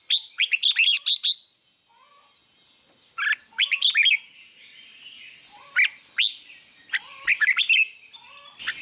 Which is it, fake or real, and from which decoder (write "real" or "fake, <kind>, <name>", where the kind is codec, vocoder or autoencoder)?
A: real